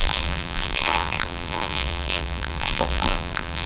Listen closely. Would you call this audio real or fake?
fake